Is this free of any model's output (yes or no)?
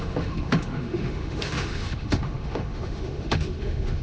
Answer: no